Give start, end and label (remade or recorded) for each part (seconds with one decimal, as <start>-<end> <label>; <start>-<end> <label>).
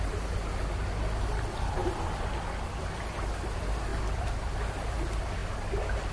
0.0-3.9 recorded; 3.9-4.6 remade; 4.6-6.1 recorded